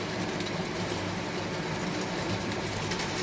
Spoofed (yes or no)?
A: no